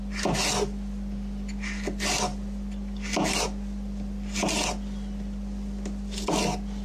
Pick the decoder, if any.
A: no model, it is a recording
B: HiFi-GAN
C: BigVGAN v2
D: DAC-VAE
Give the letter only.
A